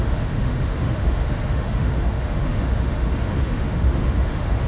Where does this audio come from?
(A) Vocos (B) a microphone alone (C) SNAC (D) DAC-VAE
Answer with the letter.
D